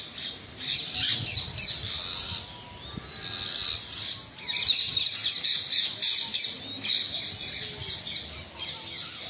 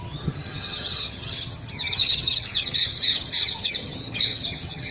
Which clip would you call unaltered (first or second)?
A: first